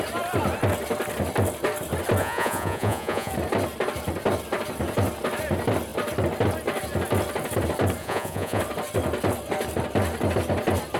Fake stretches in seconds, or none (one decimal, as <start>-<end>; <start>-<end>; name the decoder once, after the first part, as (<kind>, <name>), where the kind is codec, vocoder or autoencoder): 2.2-3.3 (vocoder, Vocos); 8.0-8.6